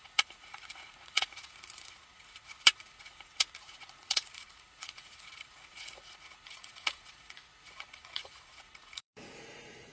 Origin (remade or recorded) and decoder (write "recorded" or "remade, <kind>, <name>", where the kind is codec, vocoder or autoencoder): remade, vocoder, Vocos